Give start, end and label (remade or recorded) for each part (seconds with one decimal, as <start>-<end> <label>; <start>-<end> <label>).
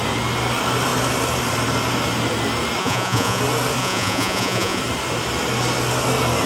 0.0-2.8 recorded; 2.8-3.4 remade; 3.4-3.8 recorded; 3.8-4.8 remade; 4.8-6.5 recorded